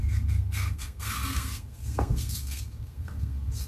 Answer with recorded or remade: remade